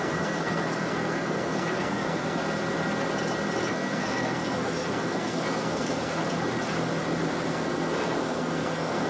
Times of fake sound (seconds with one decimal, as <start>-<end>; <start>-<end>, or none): 0.0-2.4; 3.7-6.2; 7.5-9.1